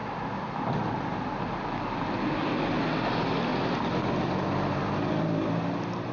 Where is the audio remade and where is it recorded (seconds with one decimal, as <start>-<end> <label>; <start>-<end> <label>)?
0.0-6.1 recorded